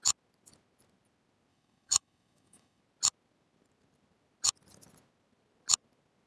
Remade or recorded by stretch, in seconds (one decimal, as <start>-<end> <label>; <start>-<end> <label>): 0.0-1.5 recorded; 1.5-2.8 remade; 2.8-6.3 recorded